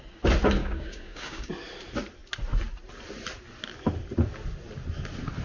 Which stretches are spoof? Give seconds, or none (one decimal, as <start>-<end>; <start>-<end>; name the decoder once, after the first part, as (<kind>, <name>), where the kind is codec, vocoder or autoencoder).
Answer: 0.6-1.5 (codec, DAC)